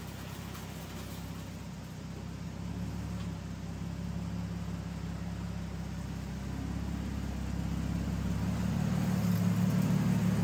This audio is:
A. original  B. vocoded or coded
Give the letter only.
A